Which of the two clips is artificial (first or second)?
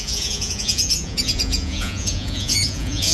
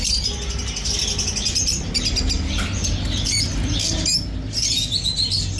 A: first